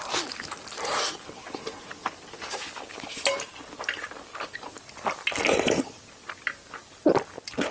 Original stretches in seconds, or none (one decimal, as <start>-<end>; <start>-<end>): 0.0-7.7